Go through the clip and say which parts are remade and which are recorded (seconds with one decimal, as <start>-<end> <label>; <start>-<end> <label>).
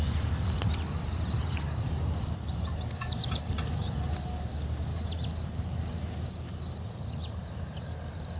0.0-1.0 recorded; 1.0-4.5 remade; 4.5-4.9 recorded; 4.9-7.5 remade; 7.5-8.4 recorded